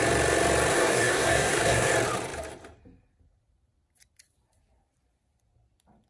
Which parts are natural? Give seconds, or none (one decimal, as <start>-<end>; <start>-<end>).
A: 0.0-0.7; 1.9-6.1